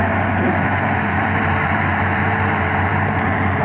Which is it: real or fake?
fake